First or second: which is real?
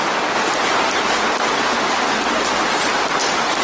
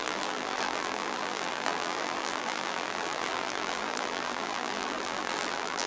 first